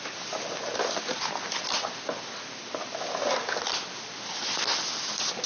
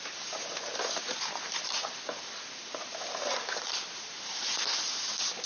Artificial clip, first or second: second